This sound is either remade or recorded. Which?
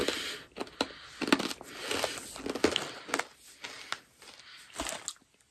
recorded